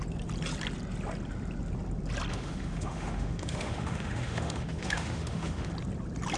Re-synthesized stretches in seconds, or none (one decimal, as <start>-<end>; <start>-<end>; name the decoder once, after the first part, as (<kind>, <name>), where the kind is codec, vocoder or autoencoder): 2.3-5.7 (autoencoder, DAC-VAE)